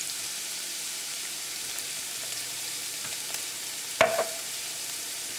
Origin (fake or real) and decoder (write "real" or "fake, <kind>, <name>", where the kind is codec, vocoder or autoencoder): fake, vocoder, BigVGAN v2